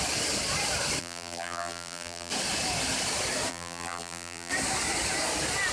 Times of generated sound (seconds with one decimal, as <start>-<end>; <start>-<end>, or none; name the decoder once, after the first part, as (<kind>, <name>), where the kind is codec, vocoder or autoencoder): 1.0-2.3 (vocoder, BigVGAN v2); 3.5-4.5